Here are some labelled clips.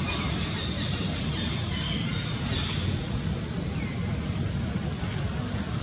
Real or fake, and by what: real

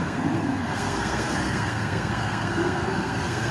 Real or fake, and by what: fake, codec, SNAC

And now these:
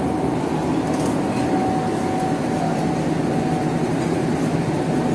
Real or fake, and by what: real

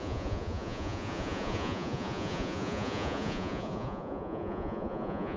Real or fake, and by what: fake, vocoder, Vocos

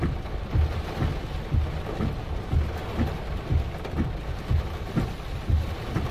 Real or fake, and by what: real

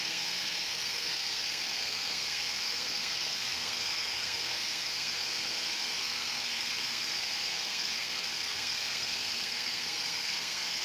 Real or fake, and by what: fake, codec, SNAC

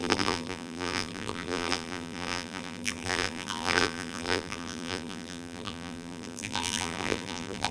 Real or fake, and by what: fake, vocoder, BigVGAN v2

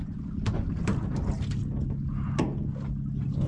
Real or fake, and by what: real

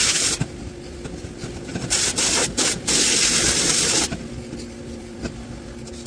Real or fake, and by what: fake, vocoder, BigVGAN v2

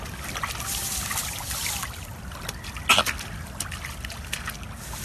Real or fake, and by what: real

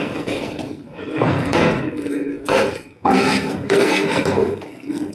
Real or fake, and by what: fake, codec, SNAC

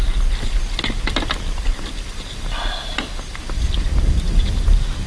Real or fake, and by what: real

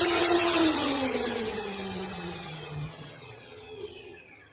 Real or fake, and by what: fake, vocoder, HiFi-GAN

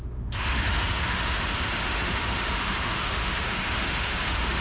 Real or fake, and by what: fake, autoencoder, DAC-VAE